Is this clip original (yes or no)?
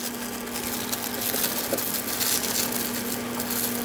yes